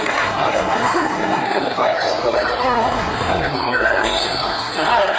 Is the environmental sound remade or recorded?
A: remade